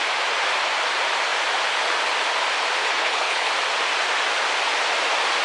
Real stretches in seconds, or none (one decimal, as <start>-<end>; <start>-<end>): 0.0-2.8; 3.5-5.4